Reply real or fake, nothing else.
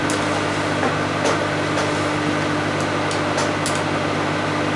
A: real